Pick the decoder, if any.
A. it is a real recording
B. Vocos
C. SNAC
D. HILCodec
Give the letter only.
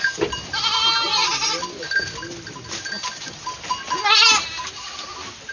A